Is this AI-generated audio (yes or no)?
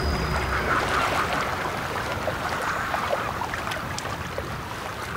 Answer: no